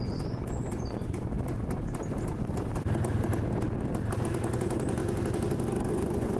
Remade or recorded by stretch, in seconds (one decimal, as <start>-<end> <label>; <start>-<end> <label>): 0.0-1.3 remade; 1.3-4.6 recorded; 4.6-5.0 remade; 5.0-5.9 recorded; 5.9-6.4 remade